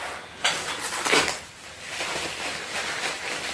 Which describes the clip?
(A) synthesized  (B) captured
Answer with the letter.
B